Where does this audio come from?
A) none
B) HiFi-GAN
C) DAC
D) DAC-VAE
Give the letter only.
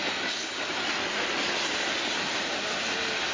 A